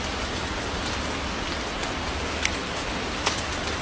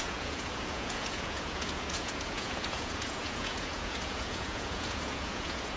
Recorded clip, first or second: first